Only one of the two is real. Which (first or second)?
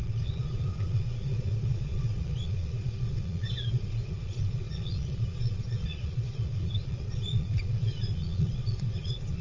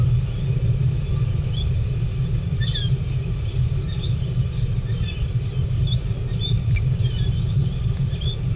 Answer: second